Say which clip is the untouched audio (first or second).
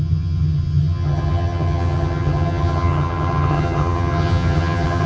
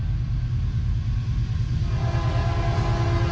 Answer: second